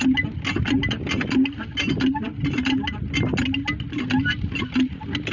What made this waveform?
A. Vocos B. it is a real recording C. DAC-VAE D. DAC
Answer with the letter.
B